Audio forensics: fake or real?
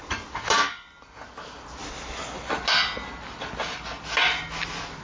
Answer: real